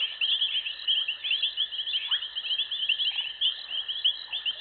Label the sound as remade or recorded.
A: recorded